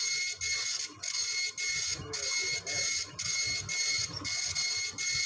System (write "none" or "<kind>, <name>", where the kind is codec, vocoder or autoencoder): none